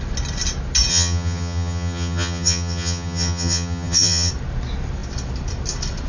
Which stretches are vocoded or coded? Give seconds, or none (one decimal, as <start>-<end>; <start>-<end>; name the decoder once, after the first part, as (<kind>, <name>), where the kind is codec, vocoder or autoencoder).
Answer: 0.9-4.3 (vocoder, HiFi-GAN)